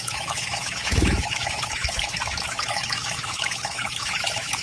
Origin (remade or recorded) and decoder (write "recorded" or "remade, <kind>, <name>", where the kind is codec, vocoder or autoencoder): remade, autoencoder, DAC-VAE